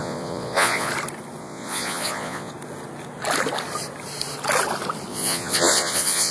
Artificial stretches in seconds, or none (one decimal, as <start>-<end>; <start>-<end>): 0.0-0.9; 1.4-2.5; 5.1-6.3